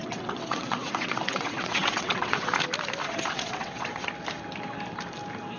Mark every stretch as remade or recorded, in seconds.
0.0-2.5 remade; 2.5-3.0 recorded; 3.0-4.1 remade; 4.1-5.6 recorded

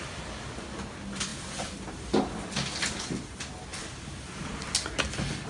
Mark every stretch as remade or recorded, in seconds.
0.0-5.5 recorded

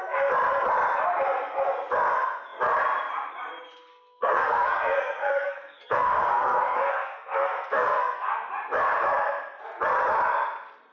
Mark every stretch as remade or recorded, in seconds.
0.0-3.9 recorded; 3.9-8.5 remade; 8.5-10.9 recorded

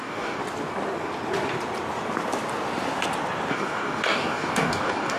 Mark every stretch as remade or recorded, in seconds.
0.0-0.4 remade; 0.4-3.5 recorded; 3.5-5.2 remade

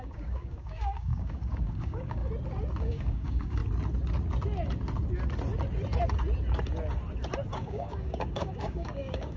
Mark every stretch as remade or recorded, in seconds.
0.0-2.2 remade; 2.2-2.8 recorded; 2.8-3.6 remade; 3.6-7.5 recorded; 7.5-9.4 remade

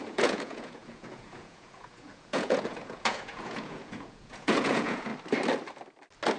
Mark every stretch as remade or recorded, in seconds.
0.0-5.1 remade; 5.1-6.4 recorded

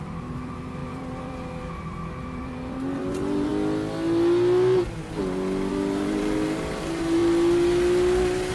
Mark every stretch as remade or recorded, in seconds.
0.0-3.5 remade; 3.5-5.7 recorded; 5.7-7.2 remade; 7.2-8.5 recorded